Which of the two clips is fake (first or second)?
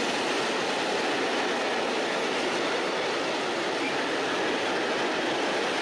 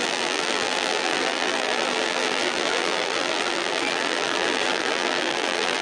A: second